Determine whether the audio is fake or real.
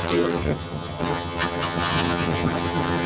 fake